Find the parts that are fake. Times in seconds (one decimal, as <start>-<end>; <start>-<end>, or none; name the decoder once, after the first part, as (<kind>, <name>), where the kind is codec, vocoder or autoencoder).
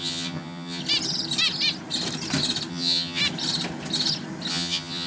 0.0-0.8 (vocoder, HiFi-GAN); 2.7-3.2; 4.5-5.1